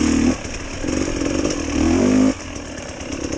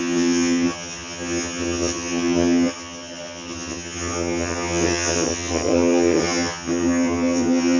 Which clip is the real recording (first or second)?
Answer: first